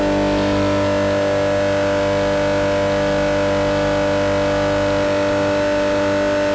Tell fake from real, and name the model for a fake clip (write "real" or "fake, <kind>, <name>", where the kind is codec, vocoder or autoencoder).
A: real